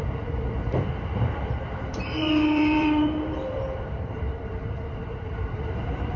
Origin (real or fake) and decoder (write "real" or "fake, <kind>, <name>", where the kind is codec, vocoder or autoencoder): fake, vocoder, BigVGAN v2